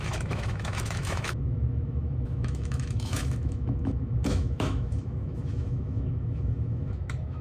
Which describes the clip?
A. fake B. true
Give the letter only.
A